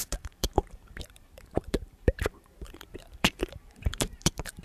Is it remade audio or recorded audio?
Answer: remade